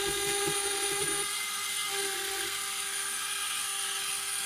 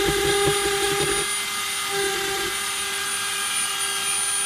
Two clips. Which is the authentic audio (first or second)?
second